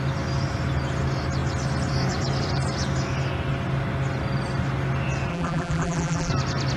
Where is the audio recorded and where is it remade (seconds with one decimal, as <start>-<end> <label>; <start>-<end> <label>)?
0.0-5.3 recorded; 5.3-6.3 remade; 6.3-6.8 recorded